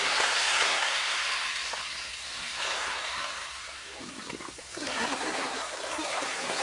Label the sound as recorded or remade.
remade